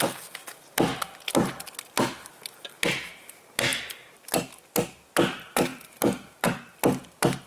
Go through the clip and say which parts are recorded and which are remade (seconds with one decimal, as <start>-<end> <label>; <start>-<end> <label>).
0.0-7.5 recorded